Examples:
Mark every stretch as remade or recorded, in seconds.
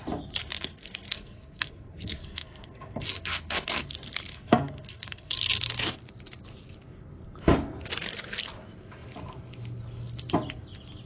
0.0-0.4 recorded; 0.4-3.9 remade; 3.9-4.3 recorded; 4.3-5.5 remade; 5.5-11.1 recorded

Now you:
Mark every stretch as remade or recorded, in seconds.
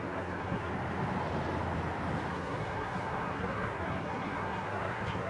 0.0-0.7 remade; 0.7-2.3 recorded; 2.3-5.3 remade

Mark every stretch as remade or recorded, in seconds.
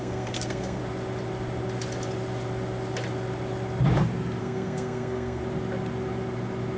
0.0-0.8 remade; 0.8-4.4 recorded; 4.4-5.4 remade; 5.4-6.8 recorded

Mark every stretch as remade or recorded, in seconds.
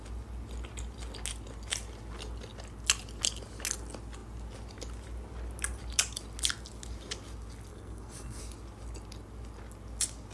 0.0-7.7 recorded; 7.7-8.4 remade; 8.4-10.3 recorded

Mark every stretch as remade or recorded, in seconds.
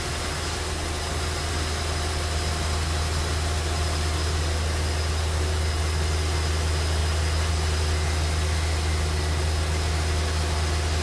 0.0-11.0 recorded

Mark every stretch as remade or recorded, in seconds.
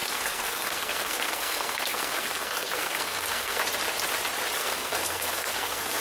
0.0-3.6 remade; 3.6-4.6 recorded; 4.6-6.0 remade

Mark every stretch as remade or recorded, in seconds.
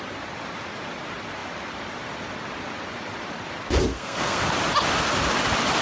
0.0-3.9 recorded; 3.9-4.4 remade; 4.4-5.8 recorded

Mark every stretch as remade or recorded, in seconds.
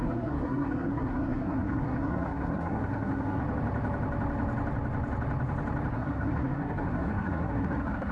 0.0-3.4 remade; 3.4-5.9 recorded; 5.9-8.1 remade